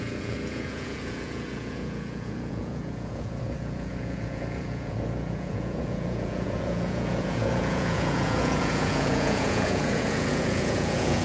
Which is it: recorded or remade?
remade